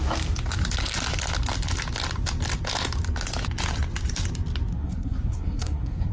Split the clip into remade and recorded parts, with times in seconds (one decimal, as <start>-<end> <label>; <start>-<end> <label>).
0.0-4.7 recorded; 4.7-6.1 remade